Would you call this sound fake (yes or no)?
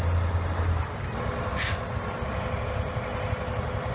no